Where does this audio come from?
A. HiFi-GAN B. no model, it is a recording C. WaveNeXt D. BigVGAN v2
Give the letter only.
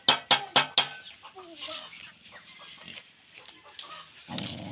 B